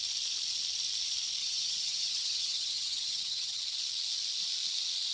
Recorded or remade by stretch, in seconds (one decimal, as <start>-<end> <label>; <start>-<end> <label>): 0.0-1.4 recorded; 1.4-3.6 remade; 3.6-5.1 recorded

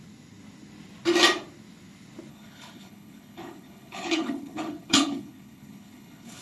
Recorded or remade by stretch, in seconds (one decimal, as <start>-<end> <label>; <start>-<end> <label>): 0.0-2.3 recorded; 2.3-6.4 remade

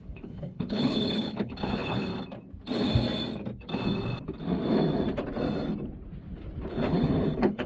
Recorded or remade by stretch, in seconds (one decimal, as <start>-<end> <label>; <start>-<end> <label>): 0.0-2.1 remade; 2.1-6.7 recorded; 6.7-7.7 remade

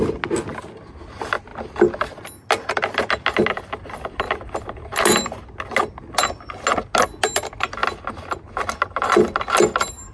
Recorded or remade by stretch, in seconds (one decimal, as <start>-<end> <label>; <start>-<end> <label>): 0.0-10.1 recorded

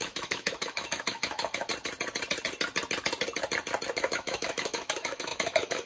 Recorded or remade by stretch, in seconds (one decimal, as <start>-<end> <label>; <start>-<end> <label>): 0.0-1.7 remade; 1.7-3.9 recorded; 3.9-5.9 remade

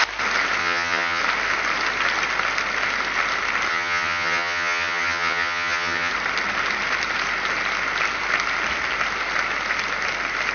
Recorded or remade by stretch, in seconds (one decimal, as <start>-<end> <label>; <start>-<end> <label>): 0.0-0.6 recorded; 0.6-1.2 remade; 1.2-3.7 recorded; 3.7-6.1 remade; 6.1-10.5 recorded